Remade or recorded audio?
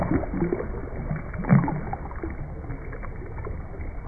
recorded